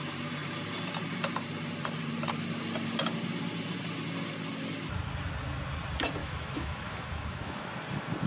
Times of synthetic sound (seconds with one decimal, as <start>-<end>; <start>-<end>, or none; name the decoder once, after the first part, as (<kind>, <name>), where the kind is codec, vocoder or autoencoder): 6.2-7.7 (autoencoder, DAC-VAE)